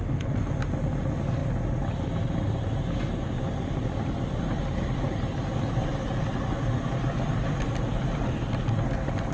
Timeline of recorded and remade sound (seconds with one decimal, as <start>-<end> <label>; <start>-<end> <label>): 0.0-9.3 recorded